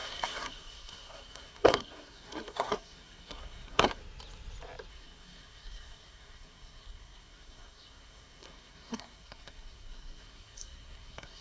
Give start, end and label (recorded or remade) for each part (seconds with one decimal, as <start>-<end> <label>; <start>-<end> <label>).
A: 0.0-4.0 remade; 4.0-4.9 recorded; 4.9-11.4 remade